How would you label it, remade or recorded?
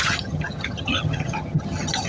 remade